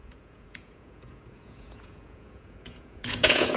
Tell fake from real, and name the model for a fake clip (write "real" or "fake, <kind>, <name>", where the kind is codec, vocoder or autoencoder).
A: fake, vocoder, Vocos